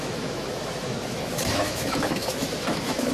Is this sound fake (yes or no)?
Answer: yes